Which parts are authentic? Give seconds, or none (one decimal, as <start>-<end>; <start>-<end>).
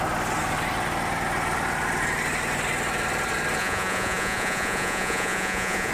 0.0-3.6